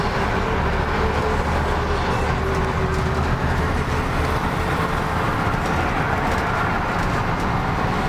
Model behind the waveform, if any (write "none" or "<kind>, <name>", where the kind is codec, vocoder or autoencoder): none